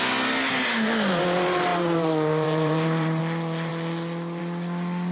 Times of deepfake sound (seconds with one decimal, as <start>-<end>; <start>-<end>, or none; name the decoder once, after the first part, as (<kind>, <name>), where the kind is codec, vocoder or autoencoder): 1.7-3.2 (vocoder, BigVGAN v2)